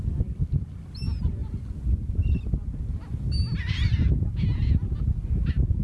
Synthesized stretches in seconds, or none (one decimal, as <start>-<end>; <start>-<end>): none